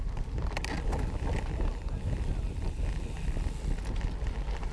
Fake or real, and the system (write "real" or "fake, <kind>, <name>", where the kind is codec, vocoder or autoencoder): real